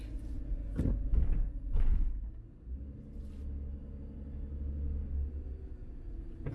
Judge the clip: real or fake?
real